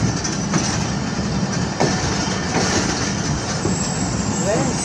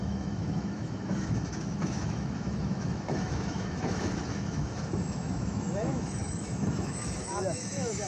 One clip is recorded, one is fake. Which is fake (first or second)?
second